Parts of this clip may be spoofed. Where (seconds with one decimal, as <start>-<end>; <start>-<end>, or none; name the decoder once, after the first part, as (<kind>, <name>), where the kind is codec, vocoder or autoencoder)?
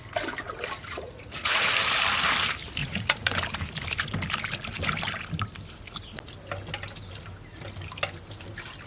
0.8-1.7 (vocoder, Vocos); 2.8-3.3